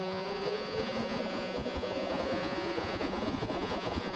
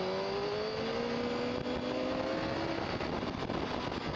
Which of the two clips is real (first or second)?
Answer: second